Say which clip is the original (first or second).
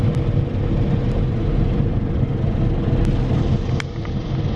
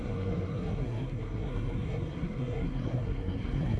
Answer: first